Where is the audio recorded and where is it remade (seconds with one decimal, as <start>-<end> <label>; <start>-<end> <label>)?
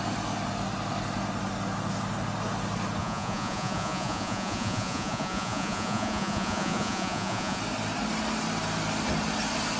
0.0-3.0 recorded; 3.0-7.6 remade; 7.6-9.8 recorded